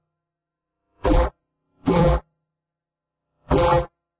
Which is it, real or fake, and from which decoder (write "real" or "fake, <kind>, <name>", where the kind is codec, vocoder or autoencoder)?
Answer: fake, vocoder, BigVGAN v2